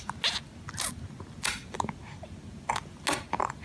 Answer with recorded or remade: recorded